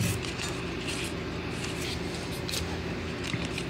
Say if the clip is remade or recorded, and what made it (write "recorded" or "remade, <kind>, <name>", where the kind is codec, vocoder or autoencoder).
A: recorded